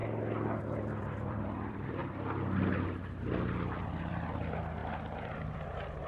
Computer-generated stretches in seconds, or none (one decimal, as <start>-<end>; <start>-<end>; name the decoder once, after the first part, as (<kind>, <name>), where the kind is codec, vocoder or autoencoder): 0.6-2.0 (vocoder, BigVGAN v2); 3.8-6.1